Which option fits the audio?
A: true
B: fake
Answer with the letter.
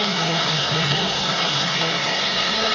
B